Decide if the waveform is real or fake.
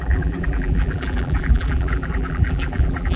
fake